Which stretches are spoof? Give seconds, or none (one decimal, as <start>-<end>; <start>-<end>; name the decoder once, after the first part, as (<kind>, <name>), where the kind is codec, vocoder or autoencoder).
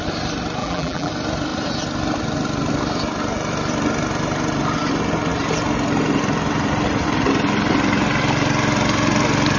0.6-1.1 (vocoder, BigVGAN v2)